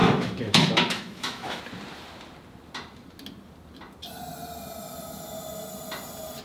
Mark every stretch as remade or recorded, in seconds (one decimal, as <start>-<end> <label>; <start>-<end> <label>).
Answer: 0.0-1.6 remade; 1.6-6.4 recorded